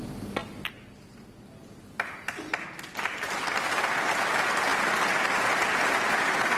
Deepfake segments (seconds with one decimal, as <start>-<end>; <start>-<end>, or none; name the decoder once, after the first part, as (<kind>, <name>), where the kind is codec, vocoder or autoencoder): none